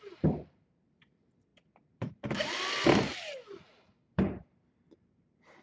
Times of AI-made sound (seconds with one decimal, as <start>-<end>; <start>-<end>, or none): 0.0-3.1; 4.1-5.6